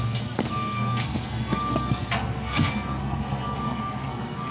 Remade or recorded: remade